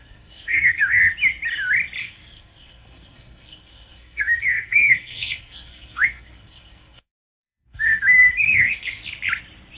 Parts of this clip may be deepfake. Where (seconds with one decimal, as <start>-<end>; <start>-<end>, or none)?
0.0-1.0; 2.0-9.0